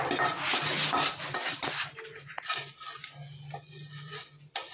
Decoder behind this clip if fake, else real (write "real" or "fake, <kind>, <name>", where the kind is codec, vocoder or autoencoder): real